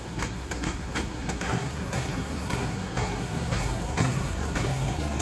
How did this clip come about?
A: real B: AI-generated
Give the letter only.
B